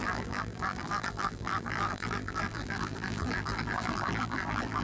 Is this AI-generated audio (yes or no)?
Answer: yes